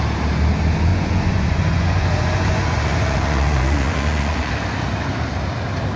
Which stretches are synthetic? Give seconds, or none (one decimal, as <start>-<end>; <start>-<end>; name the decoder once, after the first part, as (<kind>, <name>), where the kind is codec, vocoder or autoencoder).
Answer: 0.9-4.5 (vocoder, Vocos)